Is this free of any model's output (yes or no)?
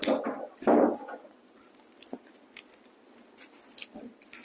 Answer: yes